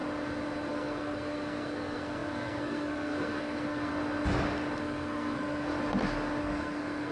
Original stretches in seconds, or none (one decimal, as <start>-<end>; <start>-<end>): 0.0-0.7; 3.9-4.8; 5.7-6.4